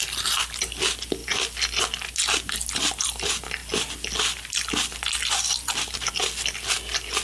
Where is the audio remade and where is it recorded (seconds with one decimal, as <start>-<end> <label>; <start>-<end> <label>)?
0.0-7.2 recorded